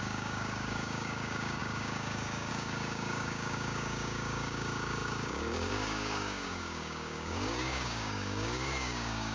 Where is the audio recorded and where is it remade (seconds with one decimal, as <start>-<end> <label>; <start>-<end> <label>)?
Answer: 0.0-9.3 remade